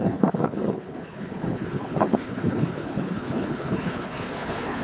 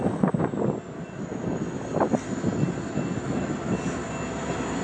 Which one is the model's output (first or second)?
first